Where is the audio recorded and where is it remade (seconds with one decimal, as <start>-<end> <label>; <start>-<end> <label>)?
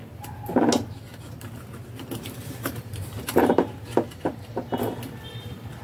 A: 0.0-1.0 recorded; 1.0-4.5 remade; 4.5-5.8 recorded